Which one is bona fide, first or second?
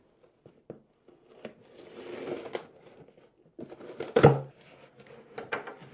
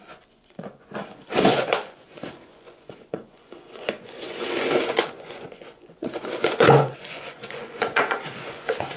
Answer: first